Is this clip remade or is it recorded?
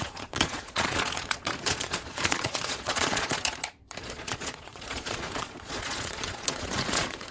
remade